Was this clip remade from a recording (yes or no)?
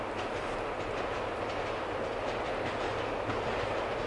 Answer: no